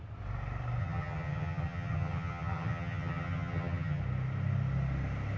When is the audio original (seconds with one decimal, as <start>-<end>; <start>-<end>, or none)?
0.0-0.8; 4.0-5.4